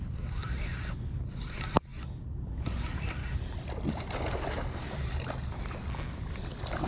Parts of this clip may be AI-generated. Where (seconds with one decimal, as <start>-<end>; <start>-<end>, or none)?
none